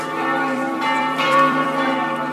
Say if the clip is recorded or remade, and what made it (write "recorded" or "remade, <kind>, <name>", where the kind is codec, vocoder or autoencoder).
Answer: remade, vocoder, BigVGAN v2